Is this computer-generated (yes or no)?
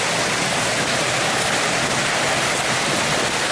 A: no